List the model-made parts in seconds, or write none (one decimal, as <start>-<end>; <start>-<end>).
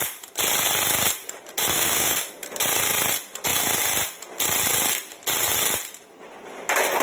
1.7-2.3